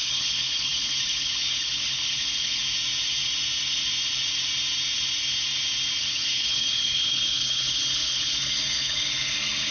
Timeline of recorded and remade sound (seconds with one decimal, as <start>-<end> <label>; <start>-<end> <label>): 0.0-2.6 remade; 2.6-6.0 recorded; 6.0-9.7 remade